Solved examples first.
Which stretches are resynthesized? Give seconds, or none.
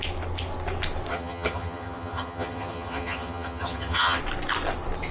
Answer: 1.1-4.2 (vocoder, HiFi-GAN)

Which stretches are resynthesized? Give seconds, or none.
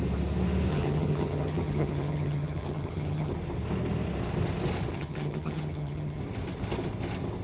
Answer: 0.7-3.3 (vocoder, HiFi-GAN); 4.9-6.2